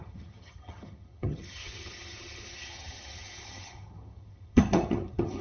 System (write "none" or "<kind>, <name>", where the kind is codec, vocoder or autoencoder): vocoder, HiFi-GAN